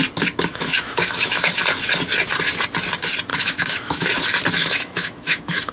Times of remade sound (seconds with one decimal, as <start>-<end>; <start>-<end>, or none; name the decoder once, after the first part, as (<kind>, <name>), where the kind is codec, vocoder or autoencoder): 0.5-1.6 (autoencoder, DAC-VAE); 3.3-4.1; 4.6-5.7